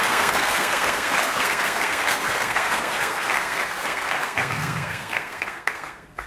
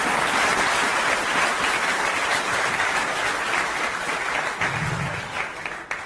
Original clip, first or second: second